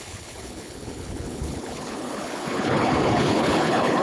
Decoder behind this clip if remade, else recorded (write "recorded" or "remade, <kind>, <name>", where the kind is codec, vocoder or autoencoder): remade, codec, HILCodec